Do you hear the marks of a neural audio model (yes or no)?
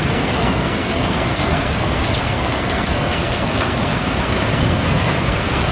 yes